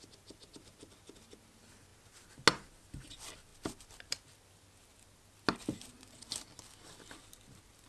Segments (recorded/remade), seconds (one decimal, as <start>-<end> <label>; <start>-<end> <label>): 0.0-7.9 recorded

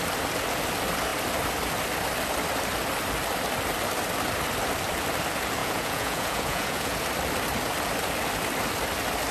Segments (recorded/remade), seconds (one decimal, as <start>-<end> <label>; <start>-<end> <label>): 0.0-5.6 recorded; 5.6-7.0 remade; 7.0-9.3 recorded